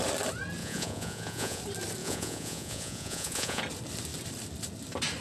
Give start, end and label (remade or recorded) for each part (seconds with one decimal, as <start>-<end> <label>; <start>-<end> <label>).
0.0-0.6 recorded; 0.6-1.6 remade; 1.6-2.0 recorded; 2.0-3.6 remade; 3.6-5.2 recorded